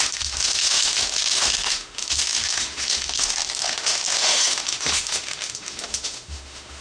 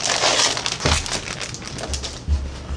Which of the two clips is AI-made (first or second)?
first